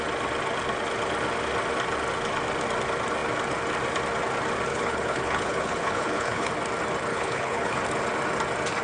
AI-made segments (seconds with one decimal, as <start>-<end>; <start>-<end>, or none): 4.7-6.5; 7.1-7.8